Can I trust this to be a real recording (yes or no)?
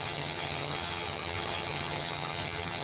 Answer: no